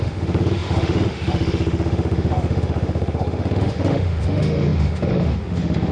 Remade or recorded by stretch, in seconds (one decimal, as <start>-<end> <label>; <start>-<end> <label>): 0.0-5.9 remade